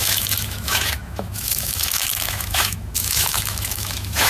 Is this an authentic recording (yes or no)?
no